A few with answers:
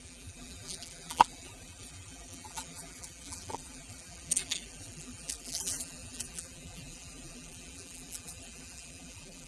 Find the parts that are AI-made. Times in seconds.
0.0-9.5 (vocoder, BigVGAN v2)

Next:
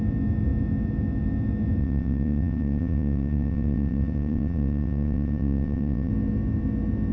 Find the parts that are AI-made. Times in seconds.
1.8-6.1 (vocoder, WaveNeXt)

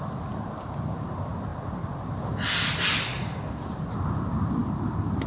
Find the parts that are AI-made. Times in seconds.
none

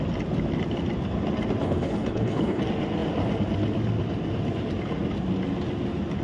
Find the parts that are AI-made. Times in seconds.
1.6-2.6 (codec, HILCodec)